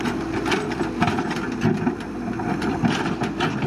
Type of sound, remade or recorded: remade